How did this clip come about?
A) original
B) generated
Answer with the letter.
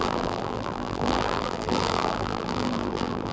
B